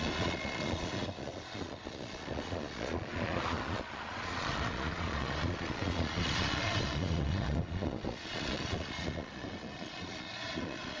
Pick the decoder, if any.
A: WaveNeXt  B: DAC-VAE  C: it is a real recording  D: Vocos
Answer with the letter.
D